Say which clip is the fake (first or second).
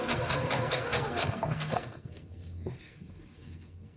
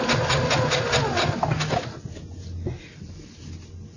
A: first